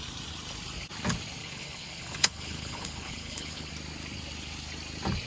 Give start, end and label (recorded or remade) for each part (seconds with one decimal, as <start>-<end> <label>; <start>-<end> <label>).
0.0-1.4 recorded; 1.4-3.7 remade; 3.7-5.3 recorded